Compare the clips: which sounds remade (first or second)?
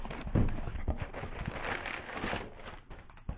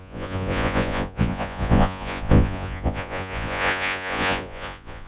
second